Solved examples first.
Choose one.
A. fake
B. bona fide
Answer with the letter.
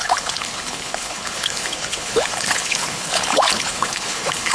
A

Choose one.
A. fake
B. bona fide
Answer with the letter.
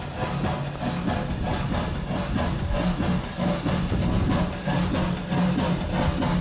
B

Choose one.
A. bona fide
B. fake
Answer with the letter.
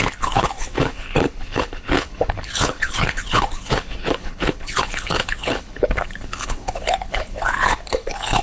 B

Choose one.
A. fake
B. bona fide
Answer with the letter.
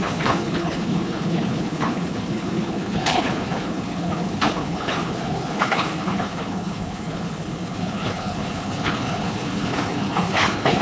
A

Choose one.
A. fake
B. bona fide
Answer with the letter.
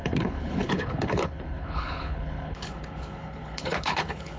A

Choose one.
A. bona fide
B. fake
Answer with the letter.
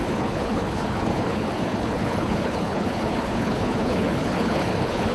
B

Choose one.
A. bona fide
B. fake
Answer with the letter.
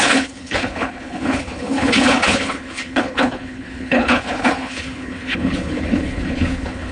B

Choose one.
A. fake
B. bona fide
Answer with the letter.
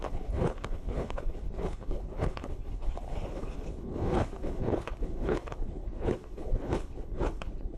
A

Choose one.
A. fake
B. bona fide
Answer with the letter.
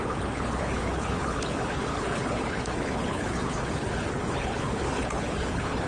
A